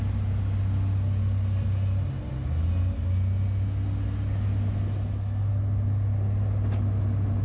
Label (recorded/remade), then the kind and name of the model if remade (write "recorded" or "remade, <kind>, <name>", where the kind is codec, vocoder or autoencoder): recorded